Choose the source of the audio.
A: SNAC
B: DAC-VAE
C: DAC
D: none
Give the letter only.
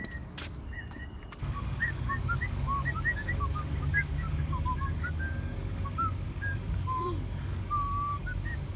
C